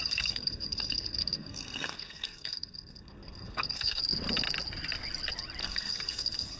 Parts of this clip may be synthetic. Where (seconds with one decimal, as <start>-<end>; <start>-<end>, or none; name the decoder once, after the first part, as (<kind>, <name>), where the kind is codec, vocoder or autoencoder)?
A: 0.0-4.0 (codec, SNAC); 5.6-6.6